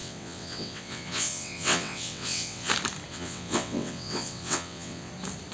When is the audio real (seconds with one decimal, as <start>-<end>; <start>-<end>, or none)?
2.7-3.1; 5.1-5.5